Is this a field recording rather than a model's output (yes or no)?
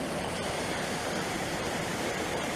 no